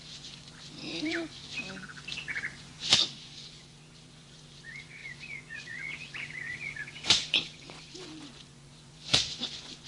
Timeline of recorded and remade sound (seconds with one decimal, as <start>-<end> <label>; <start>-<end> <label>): 0.0-1.4 remade; 1.4-2.1 recorded; 2.1-9.9 remade